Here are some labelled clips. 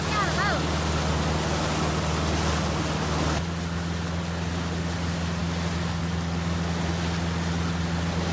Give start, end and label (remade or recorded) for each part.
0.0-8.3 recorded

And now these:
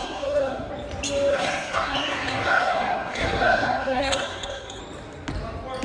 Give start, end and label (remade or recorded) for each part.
0.0-0.7 remade; 0.7-1.3 recorded; 1.3-4.8 remade; 4.8-5.8 recorded

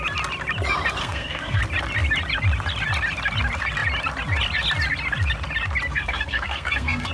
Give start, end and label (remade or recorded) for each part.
0.0-1.0 recorded; 1.0-1.6 remade; 1.6-5.9 recorded; 5.9-7.1 remade

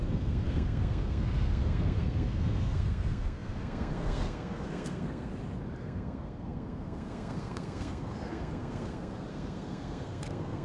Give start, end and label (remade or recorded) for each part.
0.0-5.3 remade; 5.3-5.8 recorded; 5.8-10.6 remade

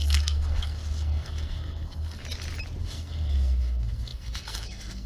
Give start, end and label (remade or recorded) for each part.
0.0-2.2 remade; 2.2-2.8 recorded; 2.8-5.1 remade

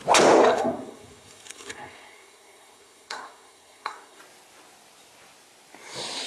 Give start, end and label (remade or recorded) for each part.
0.0-0.4 recorded; 0.4-4.2 remade; 4.2-6.3 recorded

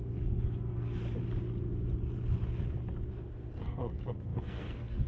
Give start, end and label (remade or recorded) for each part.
0.0-1.0 remade; 1.0-3.1 recorded; 3.1-5.1 remade

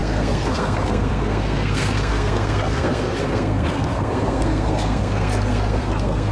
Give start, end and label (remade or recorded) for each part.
0.0-6.3 remade